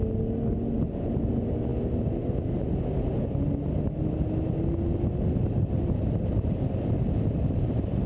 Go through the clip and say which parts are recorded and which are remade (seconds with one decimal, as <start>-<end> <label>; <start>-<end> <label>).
0.0-8.1 recorded